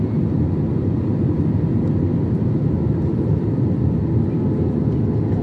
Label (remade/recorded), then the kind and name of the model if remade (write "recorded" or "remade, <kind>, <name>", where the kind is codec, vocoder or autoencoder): recorded